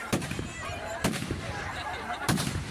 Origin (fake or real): fake